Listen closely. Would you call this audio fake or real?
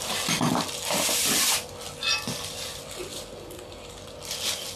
real